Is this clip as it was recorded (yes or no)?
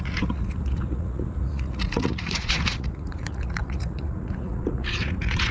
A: no